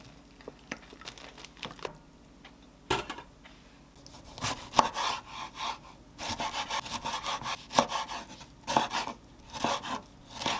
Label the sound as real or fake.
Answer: real